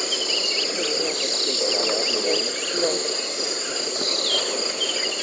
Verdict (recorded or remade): recorded